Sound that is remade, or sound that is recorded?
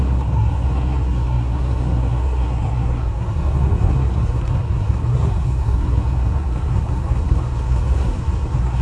remade